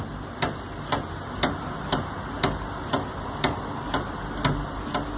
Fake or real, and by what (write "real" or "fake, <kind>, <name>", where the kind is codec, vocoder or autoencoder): real